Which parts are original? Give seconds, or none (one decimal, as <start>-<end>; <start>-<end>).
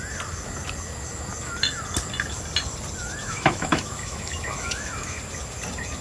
0.0-3.2; 5.2-6.0